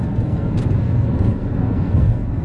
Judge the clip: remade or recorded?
remade